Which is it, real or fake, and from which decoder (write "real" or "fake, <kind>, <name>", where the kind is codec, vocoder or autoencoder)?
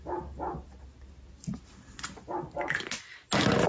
real